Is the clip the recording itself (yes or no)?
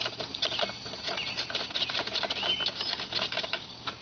yes